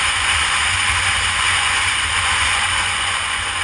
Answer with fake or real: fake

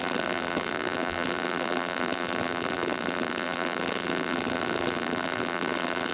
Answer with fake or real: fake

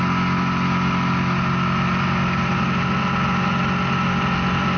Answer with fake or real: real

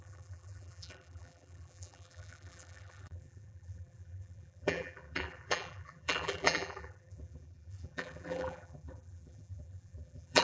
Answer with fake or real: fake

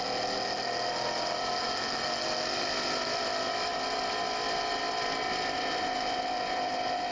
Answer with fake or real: real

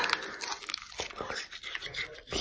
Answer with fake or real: real